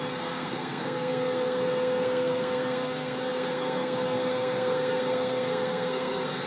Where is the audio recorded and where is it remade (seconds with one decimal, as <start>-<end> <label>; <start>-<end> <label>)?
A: 0.0-6.5 remade